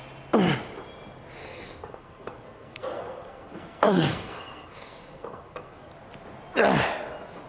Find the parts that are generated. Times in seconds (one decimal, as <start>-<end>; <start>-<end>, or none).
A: 1.4-5.9